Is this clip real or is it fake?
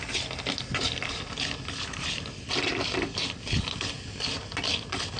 real